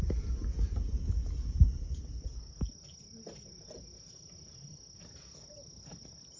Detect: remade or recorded recorded